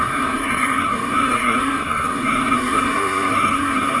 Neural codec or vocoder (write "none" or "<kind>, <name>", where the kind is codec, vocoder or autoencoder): codec, SNAC